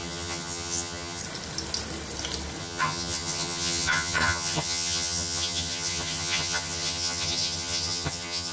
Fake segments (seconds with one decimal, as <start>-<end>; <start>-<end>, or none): 0.0-1.2; 2.6-8.5

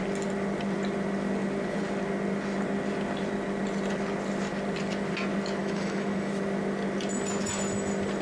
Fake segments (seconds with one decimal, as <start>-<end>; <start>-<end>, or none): 5.6-6.3

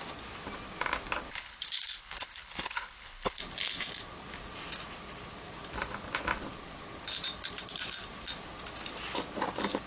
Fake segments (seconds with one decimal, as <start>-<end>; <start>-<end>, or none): 1.3-3.4

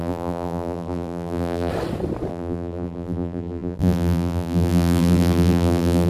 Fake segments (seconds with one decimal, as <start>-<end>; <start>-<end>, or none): 0.0-1.7; 2.3-6.1

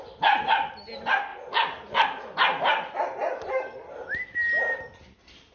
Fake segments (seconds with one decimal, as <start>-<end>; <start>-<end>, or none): none

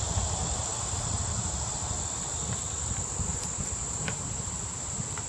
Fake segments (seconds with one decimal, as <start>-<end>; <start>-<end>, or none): 3.3-4.3

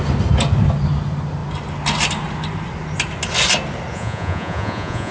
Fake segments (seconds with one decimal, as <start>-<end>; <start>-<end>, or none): 3.9-5.1

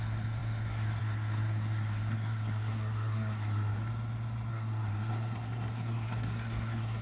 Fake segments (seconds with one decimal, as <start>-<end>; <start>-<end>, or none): 0.0-3.7; 4.5-7.0